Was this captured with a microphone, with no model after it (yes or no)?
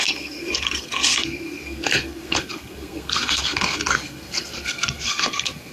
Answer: no